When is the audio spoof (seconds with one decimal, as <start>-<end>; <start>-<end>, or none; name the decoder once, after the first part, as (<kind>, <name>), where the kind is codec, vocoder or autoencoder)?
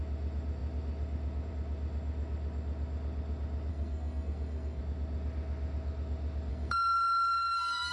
3.7-4.8 (codec, SNAC); 6.5-7.9